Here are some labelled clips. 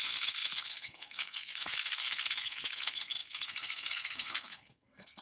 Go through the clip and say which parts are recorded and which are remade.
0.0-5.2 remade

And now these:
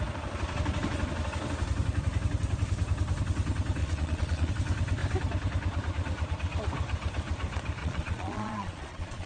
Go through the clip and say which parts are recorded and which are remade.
0.0-3.8 recorded; 3.8-4.5 remade; 4.5-7.8 recorded; 7.8-9.3 remade

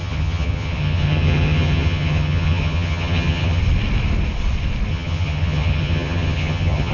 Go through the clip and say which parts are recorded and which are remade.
0.0-3.6 remade; 3.6-4.9 recorded; 4.9-6.9 remade

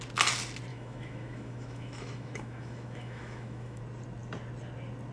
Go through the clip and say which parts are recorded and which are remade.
0.0-0.7 recorded; 0.7-3.8 remade; 3.8-5.1 recorded